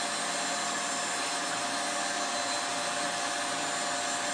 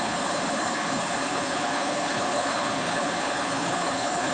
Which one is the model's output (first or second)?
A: second